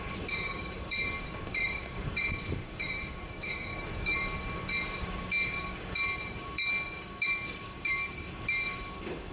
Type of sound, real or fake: fake